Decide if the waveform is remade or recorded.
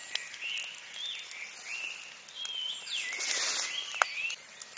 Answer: recorded